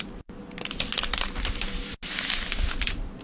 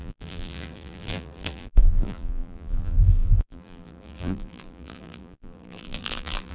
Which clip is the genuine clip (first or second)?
first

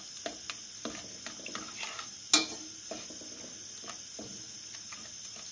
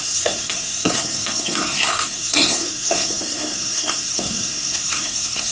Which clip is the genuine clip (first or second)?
first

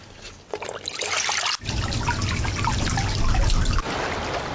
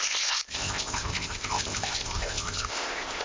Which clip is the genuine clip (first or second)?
first